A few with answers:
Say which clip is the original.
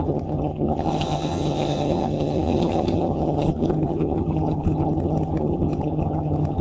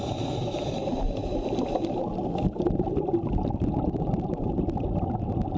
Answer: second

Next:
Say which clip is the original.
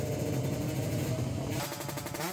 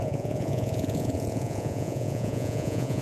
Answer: first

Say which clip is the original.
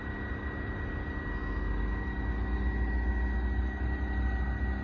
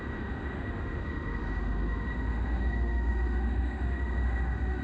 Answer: first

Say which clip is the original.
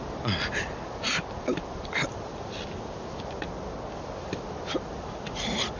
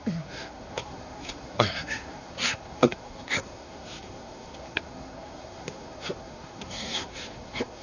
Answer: first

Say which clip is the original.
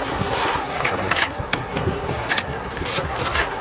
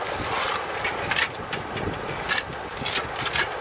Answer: second